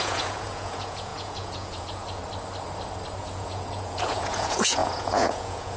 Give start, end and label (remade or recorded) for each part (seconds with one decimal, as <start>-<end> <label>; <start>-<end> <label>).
0.0-2.2 remade; 2.2-3.2 recorded; 3.2-5.8 remade